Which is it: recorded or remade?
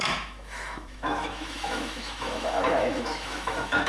remade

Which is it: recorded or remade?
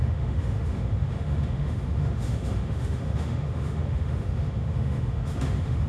remade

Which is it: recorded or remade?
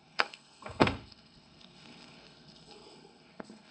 remade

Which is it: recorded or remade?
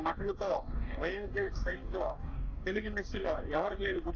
remade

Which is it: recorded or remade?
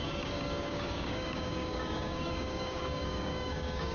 remade